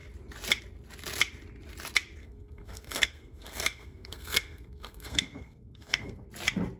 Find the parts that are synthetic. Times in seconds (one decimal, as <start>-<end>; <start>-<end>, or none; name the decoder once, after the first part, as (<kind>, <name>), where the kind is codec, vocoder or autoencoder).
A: 2.2-6.3 (codec, SNAC)